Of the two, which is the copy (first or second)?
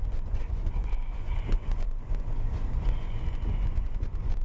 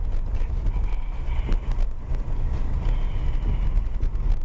first